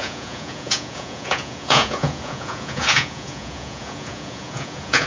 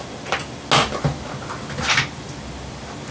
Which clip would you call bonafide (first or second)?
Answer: second